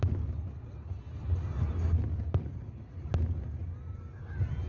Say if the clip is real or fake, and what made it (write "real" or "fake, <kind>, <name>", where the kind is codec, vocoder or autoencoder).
real